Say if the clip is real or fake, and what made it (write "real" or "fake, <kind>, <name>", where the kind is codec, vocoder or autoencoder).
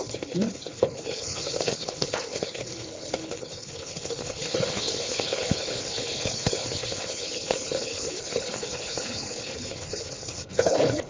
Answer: fake, codec, HILCodec